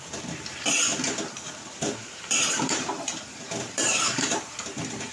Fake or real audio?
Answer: fake